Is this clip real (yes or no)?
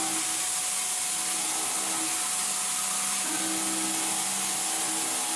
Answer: yes